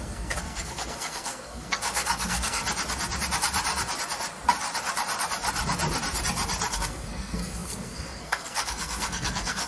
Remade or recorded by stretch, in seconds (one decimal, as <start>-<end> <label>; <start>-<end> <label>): 0.0-2.6 remade; 2.6-6.7 recorded; 6.7-9.7 remade